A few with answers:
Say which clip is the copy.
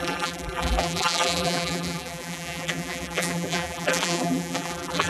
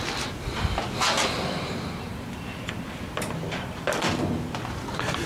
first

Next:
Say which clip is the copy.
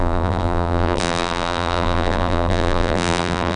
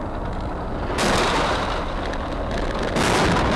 first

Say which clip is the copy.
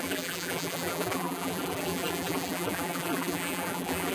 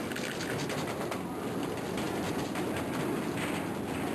first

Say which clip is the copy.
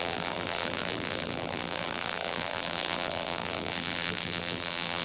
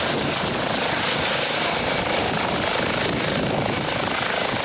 first